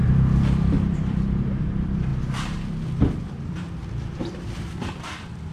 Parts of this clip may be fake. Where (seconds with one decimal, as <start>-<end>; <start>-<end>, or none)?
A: 0.0-2.1; 3.2-5.5